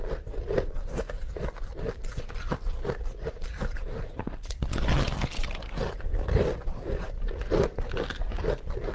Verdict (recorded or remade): recorded